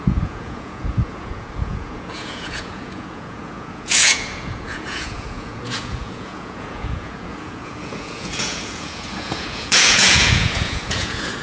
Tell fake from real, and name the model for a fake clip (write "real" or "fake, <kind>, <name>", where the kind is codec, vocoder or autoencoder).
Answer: fake, vocoder, Vocos